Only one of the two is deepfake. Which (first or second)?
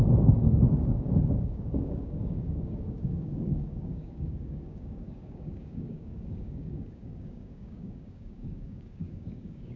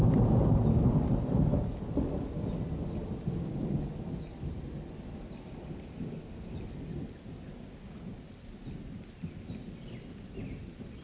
first